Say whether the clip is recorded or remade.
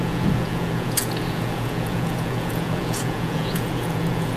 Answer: remade